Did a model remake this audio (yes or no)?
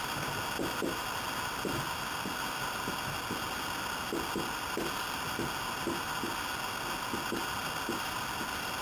no